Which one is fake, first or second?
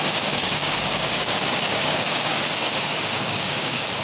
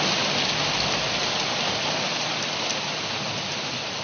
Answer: first